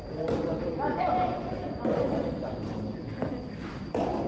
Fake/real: real